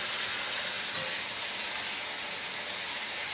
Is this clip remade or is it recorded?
recorded